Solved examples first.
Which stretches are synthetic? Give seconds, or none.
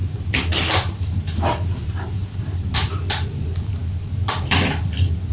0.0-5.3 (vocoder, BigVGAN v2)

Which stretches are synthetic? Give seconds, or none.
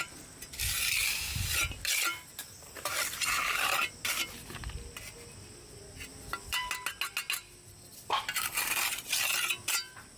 1.0-4.3 (vocoder, BigVGAN v2); 6.1-6.7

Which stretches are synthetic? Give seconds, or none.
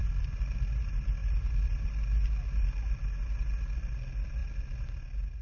none